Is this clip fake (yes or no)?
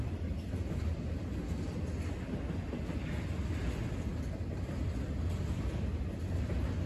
no